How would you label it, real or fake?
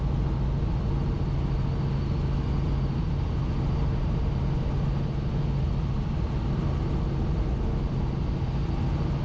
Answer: real